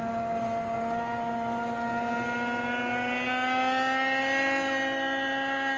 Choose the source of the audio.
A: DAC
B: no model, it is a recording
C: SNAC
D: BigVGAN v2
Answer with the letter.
B